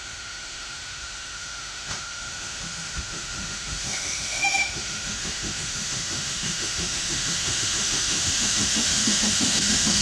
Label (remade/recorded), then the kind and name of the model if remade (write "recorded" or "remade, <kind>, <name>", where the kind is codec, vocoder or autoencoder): remade, autoencoder, DAC-VAE